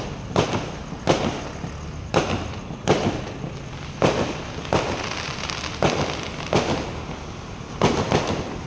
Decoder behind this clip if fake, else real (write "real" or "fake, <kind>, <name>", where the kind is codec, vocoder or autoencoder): real